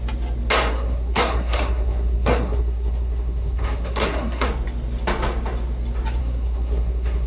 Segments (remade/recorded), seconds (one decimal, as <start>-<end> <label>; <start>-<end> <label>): 0.0-0.7 recorded; 0.7-4.5 remade; 4.5-6.2 recorded; 6.2-7.3 remade